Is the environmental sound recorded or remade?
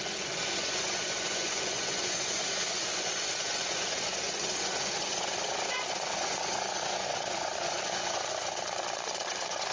remade